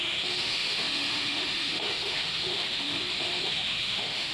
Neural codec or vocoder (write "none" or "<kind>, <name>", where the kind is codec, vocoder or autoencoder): autoencoder, DAC-VAE